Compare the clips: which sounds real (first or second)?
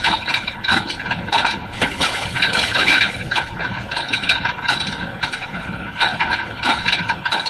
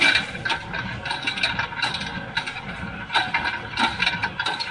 second